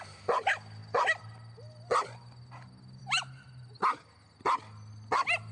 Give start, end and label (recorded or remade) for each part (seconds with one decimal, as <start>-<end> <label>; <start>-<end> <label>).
0.0-5.5 recorded